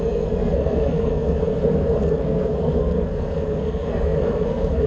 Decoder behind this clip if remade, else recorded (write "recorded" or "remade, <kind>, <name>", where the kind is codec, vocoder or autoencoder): remade, codec, SNAC